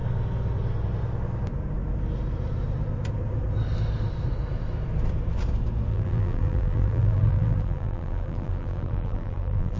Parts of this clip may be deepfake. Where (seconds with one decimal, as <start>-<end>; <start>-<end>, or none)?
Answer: 5.9-9.8